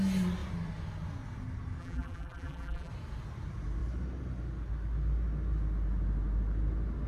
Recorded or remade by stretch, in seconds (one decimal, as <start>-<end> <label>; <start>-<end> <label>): 0.0-1.8 recorded; 1.8-2.9 remade; 2.9-7.1 recorded